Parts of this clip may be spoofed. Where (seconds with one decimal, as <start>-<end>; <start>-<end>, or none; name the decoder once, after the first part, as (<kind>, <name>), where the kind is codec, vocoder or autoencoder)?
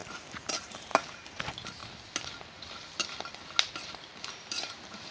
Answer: 0.0-0.9 (vocoder, BigVGAN v2); 1.4-1.8; 3.9-5.1